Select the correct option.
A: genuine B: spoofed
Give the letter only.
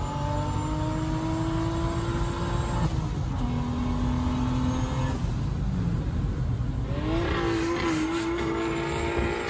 A